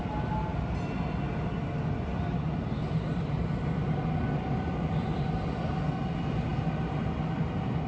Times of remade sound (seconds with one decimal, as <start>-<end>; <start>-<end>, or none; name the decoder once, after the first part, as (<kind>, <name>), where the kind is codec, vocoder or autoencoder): none